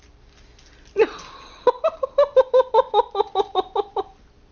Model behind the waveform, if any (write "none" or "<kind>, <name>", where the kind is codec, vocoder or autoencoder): none